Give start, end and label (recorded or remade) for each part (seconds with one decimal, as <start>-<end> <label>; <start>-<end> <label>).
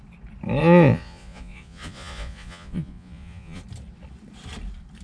0.0-0.6 recorded; 0.6-3.6 remade; 3.6-5.0 recorded